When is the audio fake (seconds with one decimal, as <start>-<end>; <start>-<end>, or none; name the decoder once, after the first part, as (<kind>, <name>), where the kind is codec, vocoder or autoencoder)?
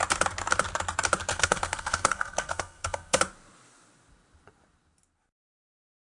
1.3-3.2 (codec, SNAC)